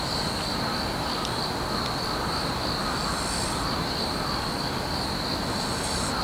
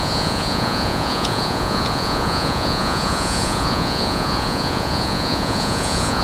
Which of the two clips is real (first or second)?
first